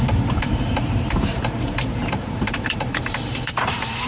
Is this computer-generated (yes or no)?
yes